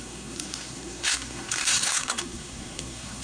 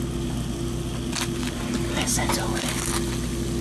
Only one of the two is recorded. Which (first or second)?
second